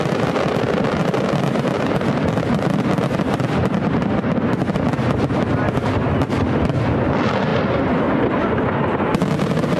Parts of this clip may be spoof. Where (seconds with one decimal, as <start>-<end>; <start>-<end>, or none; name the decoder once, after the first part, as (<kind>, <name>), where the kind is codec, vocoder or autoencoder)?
none